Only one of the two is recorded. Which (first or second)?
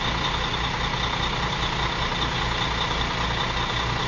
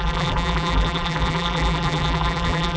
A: first